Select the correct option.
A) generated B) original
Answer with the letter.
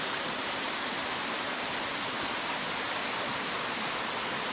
B